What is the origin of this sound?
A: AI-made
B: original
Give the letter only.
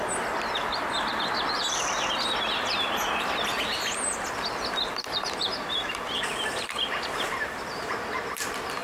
B